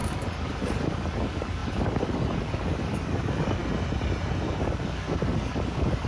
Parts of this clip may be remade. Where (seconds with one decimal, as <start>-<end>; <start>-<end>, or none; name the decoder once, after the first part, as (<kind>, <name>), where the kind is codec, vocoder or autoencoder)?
0.0-3.6 (codec, DAC); 4.6-6.1